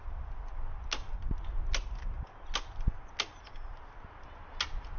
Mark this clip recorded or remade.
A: recorded